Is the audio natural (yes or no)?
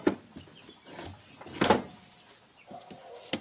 yes